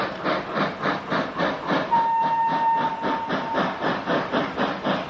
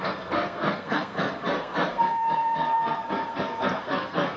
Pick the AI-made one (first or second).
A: second